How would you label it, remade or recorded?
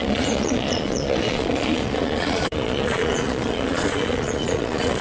remade